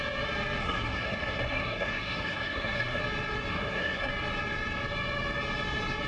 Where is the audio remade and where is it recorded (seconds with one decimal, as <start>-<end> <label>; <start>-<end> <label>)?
0.0-0.6 recorded; 0.6-3.0 remade; 3.0-3.5 recorded; 3.5-4.1 remade; 4.1-6.1 recorded